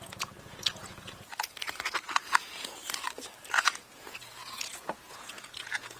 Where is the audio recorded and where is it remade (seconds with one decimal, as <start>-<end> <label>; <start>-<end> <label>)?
0.0-2.8 remade; 2.8-3.5 recorded; 3.5-6.0 remade